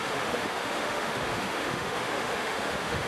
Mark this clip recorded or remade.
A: remade